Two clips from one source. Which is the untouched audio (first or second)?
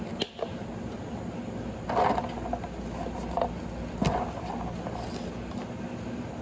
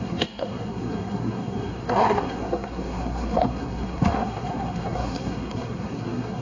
first